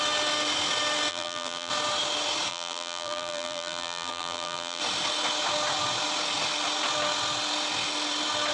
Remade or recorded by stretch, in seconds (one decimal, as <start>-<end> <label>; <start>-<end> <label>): 0.0-1.1 recorded; 1.1-1.7 remade; 1.7-2.5 recorded; 2.5-4.8 remade; 4.8-8.5 recorded